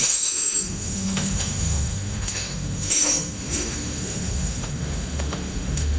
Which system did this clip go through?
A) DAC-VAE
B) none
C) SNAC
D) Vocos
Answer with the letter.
A